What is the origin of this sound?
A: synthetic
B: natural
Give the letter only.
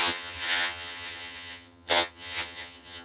A